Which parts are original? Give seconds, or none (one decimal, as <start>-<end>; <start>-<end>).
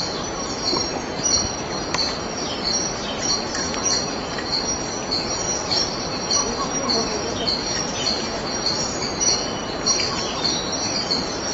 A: 0.0-11.5